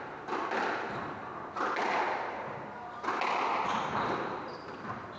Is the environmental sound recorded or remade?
recorded